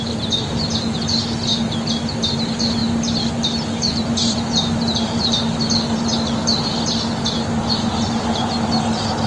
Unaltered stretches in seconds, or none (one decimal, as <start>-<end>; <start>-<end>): 0.0-9.3

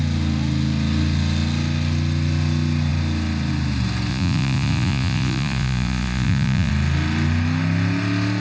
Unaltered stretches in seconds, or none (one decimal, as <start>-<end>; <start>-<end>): 0.0-4.1; 6.7-8.4

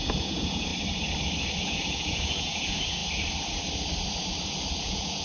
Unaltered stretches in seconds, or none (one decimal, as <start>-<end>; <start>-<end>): 0.7-1.6; 3.0-4.8

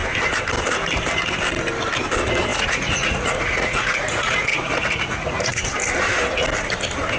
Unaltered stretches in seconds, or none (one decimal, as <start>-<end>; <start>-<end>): 0.0-2.5; 5.6-7.2

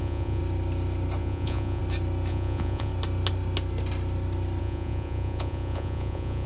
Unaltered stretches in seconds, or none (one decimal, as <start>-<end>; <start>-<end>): 0.4-1.2; 1.8-2.3; 2.9-4.6

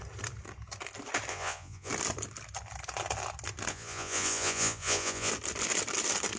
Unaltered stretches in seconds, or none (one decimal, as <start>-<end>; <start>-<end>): 0.0-1.3; 1.9-3.7; 5.3-6.4

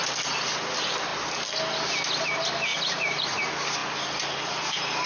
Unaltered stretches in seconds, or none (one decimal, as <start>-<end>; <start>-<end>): 0.0-2.7; 3.4-5.1

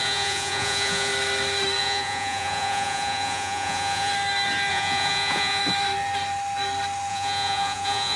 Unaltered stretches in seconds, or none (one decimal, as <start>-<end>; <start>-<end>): 1.1-1.8; 4.1-4.7; 5.6-7.1